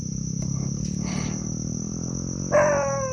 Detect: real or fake real